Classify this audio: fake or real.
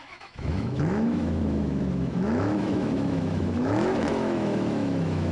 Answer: fake